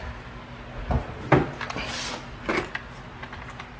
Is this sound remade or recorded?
recorded